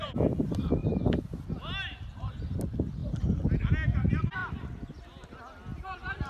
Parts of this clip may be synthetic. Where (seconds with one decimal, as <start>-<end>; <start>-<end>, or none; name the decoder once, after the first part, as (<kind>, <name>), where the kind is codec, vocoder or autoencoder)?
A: 0.8-1.4 (vocoder, BigVGAN v2); 5.7-6.3